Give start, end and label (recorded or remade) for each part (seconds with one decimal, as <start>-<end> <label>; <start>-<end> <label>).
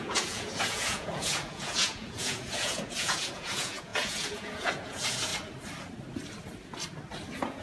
0.0-5.3 remade; 5.3-7.6 recorded